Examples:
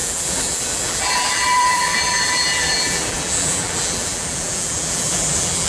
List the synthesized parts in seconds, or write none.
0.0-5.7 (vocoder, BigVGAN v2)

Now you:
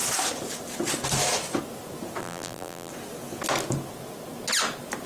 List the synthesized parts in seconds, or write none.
2.2-2.9 (vocoder, BigVGAN v2)

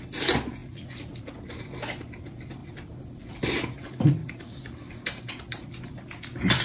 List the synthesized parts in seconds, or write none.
2.6-3.3 (vocoder, BigVGAN v2); 4.2-5.8

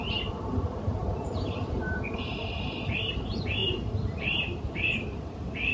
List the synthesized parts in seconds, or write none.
0.0-5.7 (vocoder, BigVGAN v2)

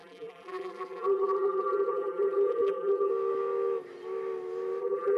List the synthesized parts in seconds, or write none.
0.0-3.1 (vocoder, BigVGAN v2); 4.8-5.2

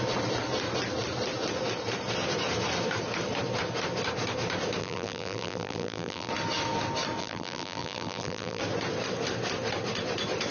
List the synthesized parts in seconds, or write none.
4.8-6.3 (vocoder, BigVGAN v2); 7.2-8.6

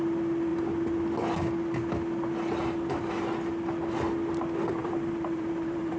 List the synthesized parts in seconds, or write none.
4.8-6.0 (vocoder, BigVGAN v2)

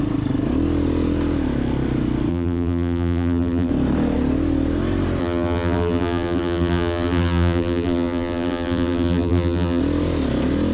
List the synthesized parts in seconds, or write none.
2.3-3.7 (vocoder, BigVGAN v2); 5.2-9.8